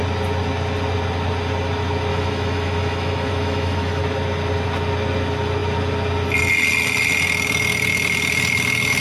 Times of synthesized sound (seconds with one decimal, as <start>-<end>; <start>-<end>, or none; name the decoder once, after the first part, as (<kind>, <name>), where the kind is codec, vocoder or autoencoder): 2.1-4.0 (autoencoder, DAC-VAE)